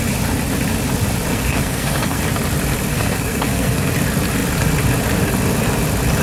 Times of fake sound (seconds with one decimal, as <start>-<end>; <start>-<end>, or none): 1.3-2.2; 2.9-3.9